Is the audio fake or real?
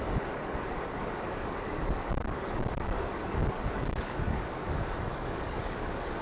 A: fake